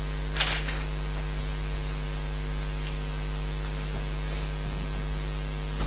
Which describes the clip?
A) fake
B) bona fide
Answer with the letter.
B